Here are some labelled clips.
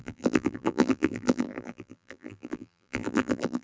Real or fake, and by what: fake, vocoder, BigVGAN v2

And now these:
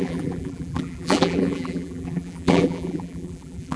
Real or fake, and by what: fake, vocoder, BigVGAN v2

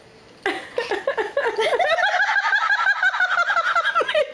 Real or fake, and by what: real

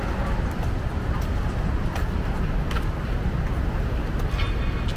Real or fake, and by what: real